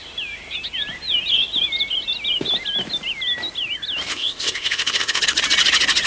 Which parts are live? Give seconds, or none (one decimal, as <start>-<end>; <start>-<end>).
0.0-4.1; 5.2-6.1